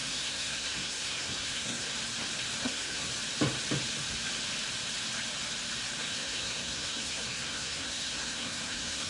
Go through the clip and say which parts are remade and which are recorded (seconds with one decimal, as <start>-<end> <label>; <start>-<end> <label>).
0.0-1.9 remade; 1.9-2.6 recorded; 2.6-3.1 remade; 3.1-6.0 recorded; 6.0-9.1 remade